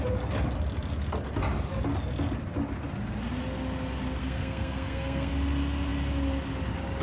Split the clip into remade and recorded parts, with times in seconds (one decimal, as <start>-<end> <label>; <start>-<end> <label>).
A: 0.0-4.2 recorded; 4.2-5.3 remade; 5.3-7.0 recorded